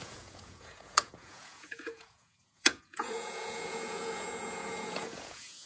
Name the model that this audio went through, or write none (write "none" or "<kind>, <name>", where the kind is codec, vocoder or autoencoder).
vocoder, Vocos